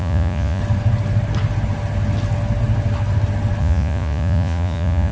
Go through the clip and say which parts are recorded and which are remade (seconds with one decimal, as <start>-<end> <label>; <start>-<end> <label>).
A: 0.0-0.6 remade; 0.6-3.6 recorded; 3.6-5.1 remade